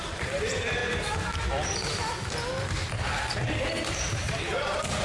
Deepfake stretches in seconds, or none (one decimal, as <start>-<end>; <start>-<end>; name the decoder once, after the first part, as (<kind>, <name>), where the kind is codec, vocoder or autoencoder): 0.0-0.8 (vocoder, BigVGAN v2); 3.8-5.0